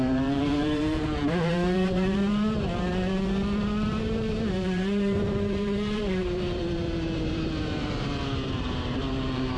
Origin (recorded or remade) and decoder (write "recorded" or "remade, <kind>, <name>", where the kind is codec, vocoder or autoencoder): remade, vocoder, BigVGAN v2